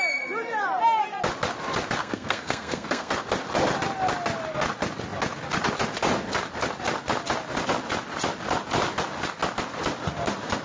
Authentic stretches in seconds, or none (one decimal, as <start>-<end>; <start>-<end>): 0.0-2.0; 3.1-10.6